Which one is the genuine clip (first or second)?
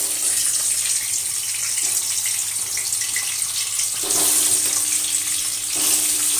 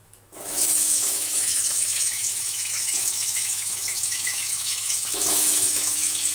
first